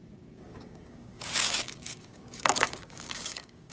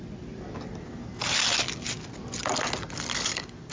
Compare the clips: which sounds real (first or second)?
second